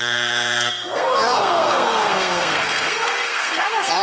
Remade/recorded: remade